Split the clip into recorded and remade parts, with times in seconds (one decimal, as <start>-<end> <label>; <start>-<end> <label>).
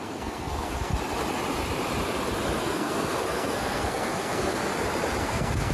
0.0-0.9 remade; 0.9-2.6 recorded; 2.6-4.7 remade; 4.7-5.2 recorded; 5.2-5.7 remade